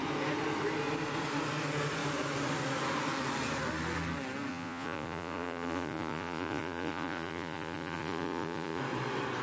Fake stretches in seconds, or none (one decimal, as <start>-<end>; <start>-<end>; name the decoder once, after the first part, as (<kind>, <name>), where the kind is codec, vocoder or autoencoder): 4.5-8.8 (vocoder, Vocos)